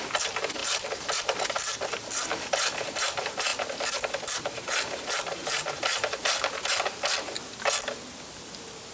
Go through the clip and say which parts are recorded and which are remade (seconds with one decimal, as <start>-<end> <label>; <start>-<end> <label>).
0.0-8.9 remade